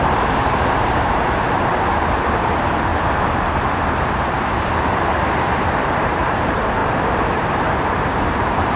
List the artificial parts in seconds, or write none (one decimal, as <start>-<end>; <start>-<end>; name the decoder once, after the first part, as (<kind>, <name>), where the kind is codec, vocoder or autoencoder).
0.0-2.9 (vocoder, BigVGAN v2); 5.7-6.8; 7.3-8.8